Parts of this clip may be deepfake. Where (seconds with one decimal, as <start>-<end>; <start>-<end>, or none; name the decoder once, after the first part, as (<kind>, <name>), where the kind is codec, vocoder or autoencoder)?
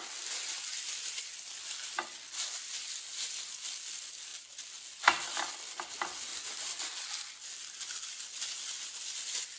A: none